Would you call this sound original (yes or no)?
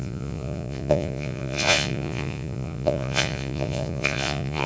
no